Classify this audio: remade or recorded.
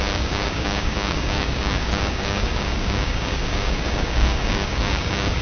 remade